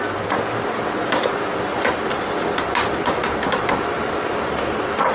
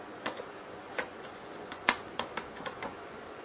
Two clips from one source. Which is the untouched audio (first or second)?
first